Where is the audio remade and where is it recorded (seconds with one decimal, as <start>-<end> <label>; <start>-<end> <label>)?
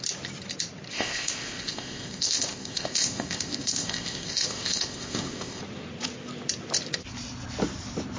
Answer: 0.0-0.9 recorded; 0.9-5.6 remade; 5.6-8.2 recorded